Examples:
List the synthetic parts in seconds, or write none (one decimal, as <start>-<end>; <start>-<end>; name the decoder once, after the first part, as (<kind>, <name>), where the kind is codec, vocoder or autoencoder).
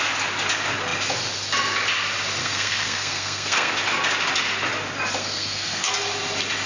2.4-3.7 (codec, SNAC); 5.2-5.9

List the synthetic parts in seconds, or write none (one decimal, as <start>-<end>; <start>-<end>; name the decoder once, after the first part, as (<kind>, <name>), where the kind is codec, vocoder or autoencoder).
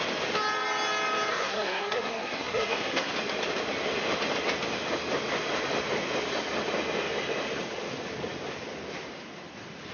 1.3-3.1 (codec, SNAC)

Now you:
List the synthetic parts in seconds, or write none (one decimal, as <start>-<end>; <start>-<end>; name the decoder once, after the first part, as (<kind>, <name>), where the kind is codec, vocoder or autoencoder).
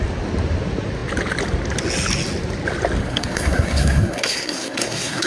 3.0-5.3 (codec, SNAC)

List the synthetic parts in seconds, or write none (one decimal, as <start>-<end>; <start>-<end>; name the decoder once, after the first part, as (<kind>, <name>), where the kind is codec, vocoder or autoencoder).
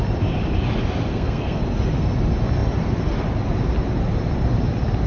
1.1-1.6 (codec, SNAC)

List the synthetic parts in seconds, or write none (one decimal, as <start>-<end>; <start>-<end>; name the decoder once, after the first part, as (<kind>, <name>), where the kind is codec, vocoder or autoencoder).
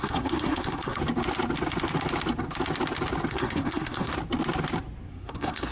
0.0-1.0 (codec, SNAC); 3.3-4.1; 5.1-5.7